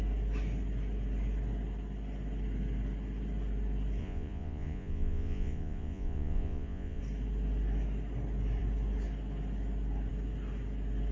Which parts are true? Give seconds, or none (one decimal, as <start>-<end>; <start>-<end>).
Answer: 0.0-4.0; 7.0-11.1

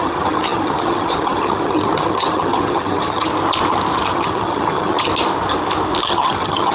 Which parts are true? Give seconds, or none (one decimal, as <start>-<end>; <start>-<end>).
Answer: 3.3-4.1; 5.1-6.0

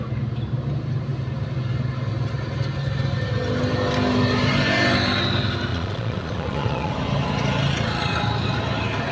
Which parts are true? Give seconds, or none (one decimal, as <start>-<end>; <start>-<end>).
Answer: 0.0-5.7; 6.9-9.1

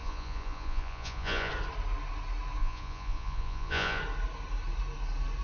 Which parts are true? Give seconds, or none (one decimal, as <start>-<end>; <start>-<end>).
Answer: 1.5-2.6; 4.0-5.4

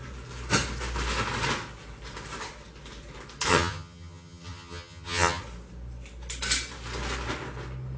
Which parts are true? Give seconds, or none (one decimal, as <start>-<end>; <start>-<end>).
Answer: 0.0-3.5; 5.4-8.0